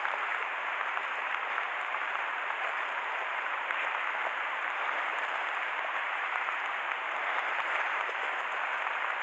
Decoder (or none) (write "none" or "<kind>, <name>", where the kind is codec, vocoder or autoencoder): vocoder, BigVGAN v2